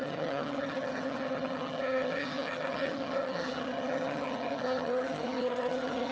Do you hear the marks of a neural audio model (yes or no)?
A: yes